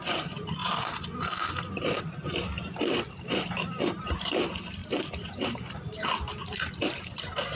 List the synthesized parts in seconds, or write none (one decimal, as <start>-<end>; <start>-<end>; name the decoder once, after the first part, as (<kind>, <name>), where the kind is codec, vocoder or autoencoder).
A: 0.0-7.6 (vocoder, BigVGAN v2)